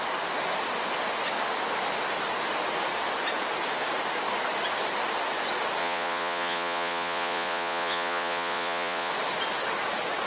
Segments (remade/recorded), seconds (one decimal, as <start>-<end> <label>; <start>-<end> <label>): 0.0-5.8 recorded; 5.8-9.1 remade; 9.1-10.3 recorded